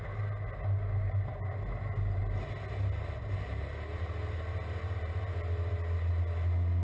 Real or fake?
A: real